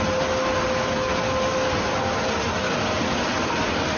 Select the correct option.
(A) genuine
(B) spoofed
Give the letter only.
A